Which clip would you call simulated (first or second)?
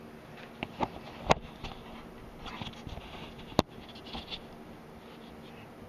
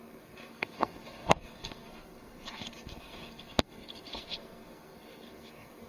second